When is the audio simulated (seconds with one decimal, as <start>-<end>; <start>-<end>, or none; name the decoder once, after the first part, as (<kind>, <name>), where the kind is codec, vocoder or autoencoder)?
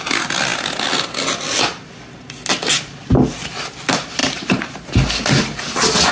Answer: 4.2-4.9 (vocoder, BigVGAN v2)